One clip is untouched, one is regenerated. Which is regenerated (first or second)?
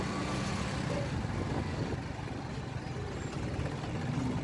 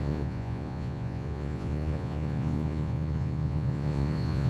second